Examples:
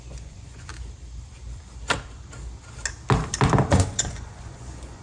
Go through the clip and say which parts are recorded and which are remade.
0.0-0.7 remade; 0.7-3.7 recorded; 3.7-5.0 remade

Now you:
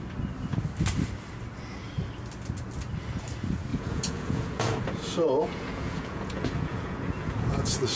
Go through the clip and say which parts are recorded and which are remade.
0.0-3.7 recorded; 3.7-8.0 remade

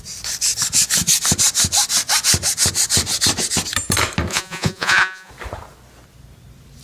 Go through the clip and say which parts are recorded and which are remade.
0.0-4.3 recorded; 4.3-5.3 remade; 5.3-6.8 recorded

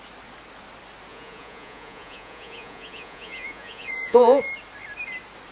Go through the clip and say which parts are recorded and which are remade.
0.0-1.1 recorded; 1.1-4.4 remade; 4.4-5.5 recorded

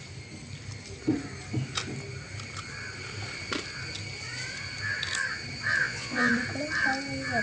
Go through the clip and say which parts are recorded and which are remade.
0.0-5.8 recorded; 5.8-6.3 remade; 6.3-7.4 recorded